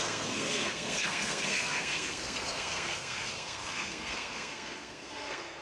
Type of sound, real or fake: fake